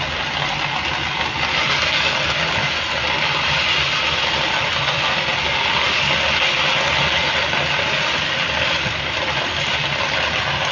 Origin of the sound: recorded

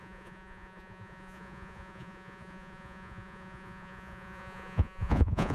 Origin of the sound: remade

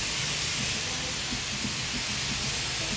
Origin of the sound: recorded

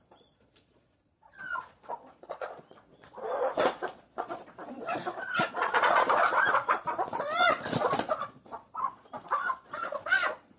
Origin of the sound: remade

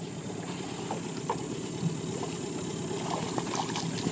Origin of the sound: recorded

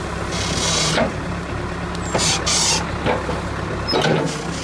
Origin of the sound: recorded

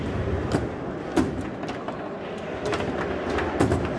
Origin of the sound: recorded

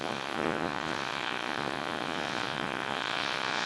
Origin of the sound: remade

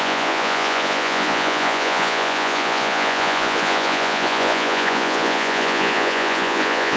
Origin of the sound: remade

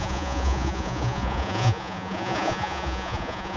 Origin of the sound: remade